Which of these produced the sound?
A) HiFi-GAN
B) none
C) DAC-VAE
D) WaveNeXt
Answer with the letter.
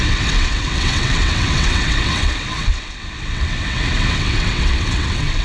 D